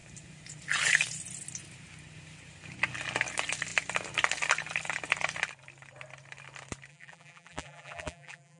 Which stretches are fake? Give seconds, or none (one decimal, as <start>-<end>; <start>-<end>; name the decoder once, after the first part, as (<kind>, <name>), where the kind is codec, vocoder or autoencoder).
6.9-8.6 (vocoder, BigVGAN v2)

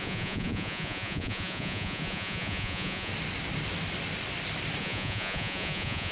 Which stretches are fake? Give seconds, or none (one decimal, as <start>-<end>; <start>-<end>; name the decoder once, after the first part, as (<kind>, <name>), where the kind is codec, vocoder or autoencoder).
0.0-3.1 (vocoder, Vocos); 4.8-6.1

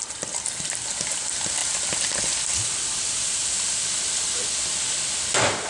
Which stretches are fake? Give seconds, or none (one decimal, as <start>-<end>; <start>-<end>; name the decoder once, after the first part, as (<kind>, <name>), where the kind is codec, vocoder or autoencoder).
none

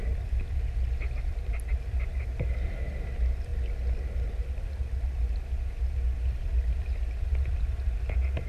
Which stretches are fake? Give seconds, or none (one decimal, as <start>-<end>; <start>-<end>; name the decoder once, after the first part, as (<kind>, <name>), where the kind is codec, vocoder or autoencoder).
none